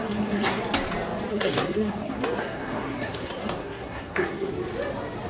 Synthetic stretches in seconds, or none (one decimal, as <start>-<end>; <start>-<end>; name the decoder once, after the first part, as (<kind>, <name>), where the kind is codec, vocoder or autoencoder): 0.0-0.6 (codec, SNAC); 1.3-4.5